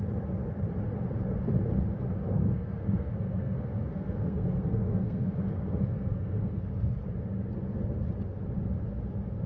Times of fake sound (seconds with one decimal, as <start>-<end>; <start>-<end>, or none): 2.4-6.9